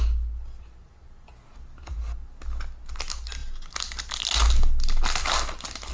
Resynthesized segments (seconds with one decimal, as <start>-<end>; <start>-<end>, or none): none